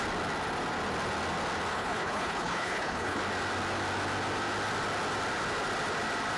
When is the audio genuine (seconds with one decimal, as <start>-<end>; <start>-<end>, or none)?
0.0-1.7; 3.2-6.4

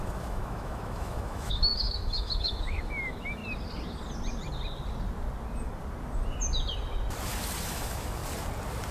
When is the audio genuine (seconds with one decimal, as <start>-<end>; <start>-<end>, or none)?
3.4-7.6; 8.2-8.9

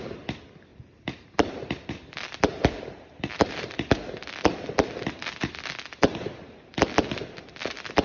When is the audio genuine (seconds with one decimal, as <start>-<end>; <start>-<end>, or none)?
0.0-0.7; 1.9-2.5; 3.7-8.0

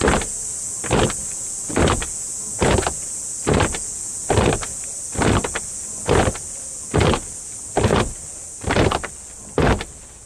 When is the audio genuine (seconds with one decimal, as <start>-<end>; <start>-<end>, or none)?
0.0-1.2; 1.7-10.3

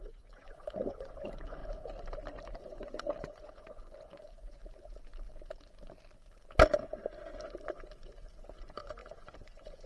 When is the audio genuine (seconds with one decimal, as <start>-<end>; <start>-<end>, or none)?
1.6-2.5; 4.6-8.6

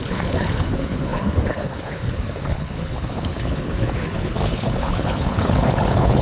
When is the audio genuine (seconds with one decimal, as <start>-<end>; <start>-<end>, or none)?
none